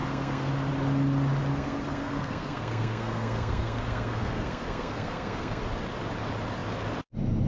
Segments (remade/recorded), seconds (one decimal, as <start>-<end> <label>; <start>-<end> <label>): 0.0-0.5 remade; 0.5-1.5 recorded; 1.5-5.6 remade; 5.6-7.5 recorded